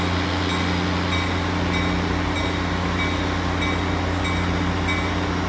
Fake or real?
real